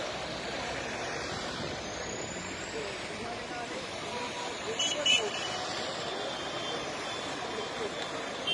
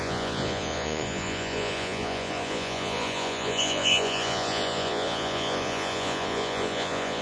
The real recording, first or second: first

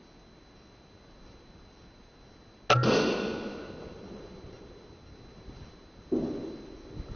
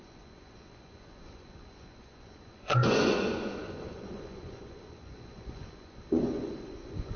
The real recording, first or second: first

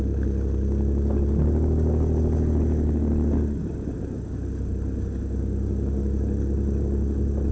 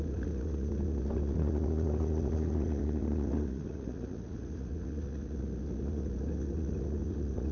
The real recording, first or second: first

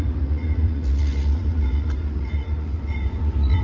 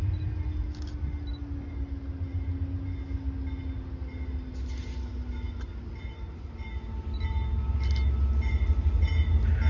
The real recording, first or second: second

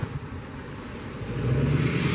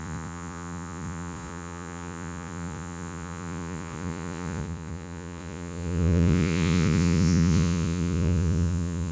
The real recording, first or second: first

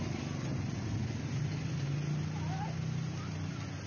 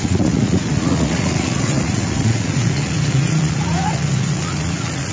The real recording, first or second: first